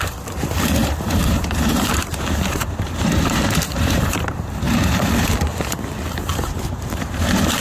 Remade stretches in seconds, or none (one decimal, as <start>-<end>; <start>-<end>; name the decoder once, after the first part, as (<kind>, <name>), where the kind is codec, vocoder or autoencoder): 1.2-5.2 (vocoder, BigVGAN v2); 6.3-7.6